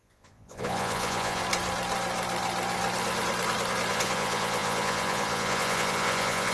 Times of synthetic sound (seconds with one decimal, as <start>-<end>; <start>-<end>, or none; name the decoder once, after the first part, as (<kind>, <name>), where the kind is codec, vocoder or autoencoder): 0.0-1.4 (vocoder, Vocos); 3.9-6.5